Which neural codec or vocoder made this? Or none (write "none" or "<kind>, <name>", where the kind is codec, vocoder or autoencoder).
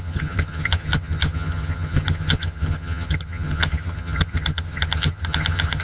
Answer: vocoder, HiFi-GAN